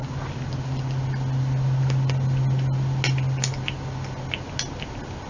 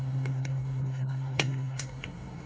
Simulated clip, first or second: second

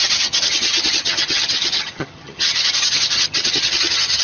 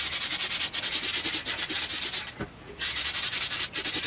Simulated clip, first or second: first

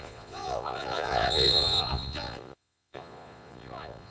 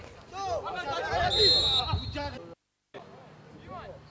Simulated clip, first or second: first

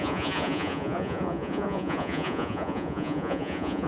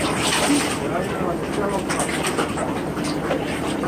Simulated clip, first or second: first